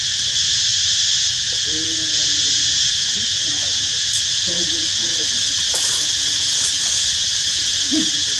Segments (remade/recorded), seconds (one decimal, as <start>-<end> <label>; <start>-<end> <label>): 0.0-0.7 remade; 0.7-1.5 recorded; 1.5-8.4 remade